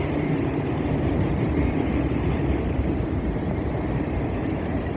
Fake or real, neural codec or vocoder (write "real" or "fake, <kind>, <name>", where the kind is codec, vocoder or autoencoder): fake, vocoder, BigVGAN v2